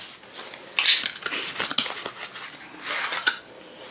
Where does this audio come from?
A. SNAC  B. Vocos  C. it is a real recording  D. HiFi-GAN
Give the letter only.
C